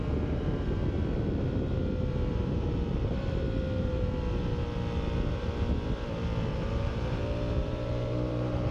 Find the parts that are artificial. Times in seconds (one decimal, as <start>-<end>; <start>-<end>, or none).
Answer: 0.0-0.8; 3.8-4.5; 6.4-8.7